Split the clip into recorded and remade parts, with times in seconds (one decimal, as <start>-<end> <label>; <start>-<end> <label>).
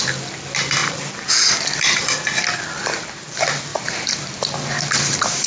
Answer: 0.0-3.7 recorded; 3.7-4.2 remade; 4.2-5.5 recorded